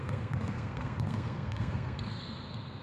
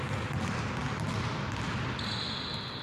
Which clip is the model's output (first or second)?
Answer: first